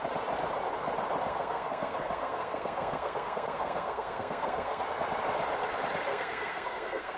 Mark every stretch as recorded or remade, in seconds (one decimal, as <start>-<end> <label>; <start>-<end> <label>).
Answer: 0.0-1.3 recorded; 1.3-4.8 remade; 4.8-6.1 recorded; 6.1-7.2 remade

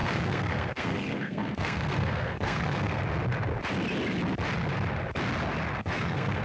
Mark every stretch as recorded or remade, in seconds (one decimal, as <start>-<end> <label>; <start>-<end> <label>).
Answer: 0.0-3.0 remade; 3.0-5.8 recorded; 5.8-6.4 remade

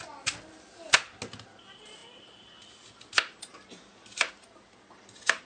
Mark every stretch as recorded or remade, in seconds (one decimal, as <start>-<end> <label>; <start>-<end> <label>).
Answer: 0.0-5.5 recorded

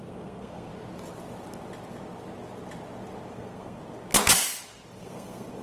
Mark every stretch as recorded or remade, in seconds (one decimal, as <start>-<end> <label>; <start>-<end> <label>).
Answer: 0.0-0.7 remade; 0.7-3.3 recorded; 3.3-3.8 remade; 3.8-5.0 recorded; 5.0-5.6 remade

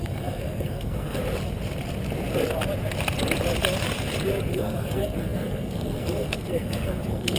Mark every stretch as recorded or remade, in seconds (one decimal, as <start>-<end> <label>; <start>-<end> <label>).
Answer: 0.0-1.2 remade; 1.2-4.5 recorded; 4.5-7.4 remade

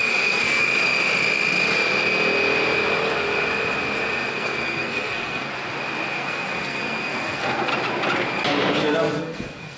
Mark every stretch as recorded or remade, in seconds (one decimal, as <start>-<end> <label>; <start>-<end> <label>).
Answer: 0.0-0.7 remade; 0.7-4.3 recorded; 4.3-5.5 remade; 5.5-6.1 recorded; 6.1-7.7 remade; 7.7-9.2 recorded; 9.2-9.8 remade

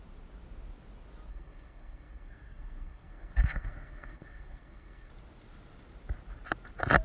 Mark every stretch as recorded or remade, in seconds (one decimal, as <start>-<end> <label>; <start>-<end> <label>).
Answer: 0.0-1.3 recorded; 1.3-5.1 remade; 5.1-7.0 recorded

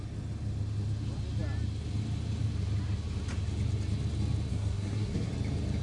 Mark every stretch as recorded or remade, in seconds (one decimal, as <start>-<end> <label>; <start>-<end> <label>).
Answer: 0.0-4.5 recorded; 4.5-5.3 remade; 5.3-5.8 recorded